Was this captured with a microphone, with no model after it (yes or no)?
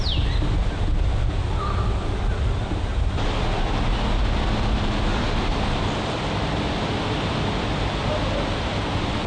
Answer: yes